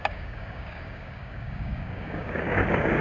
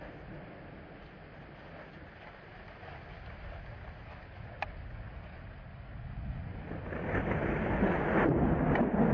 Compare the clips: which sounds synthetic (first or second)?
first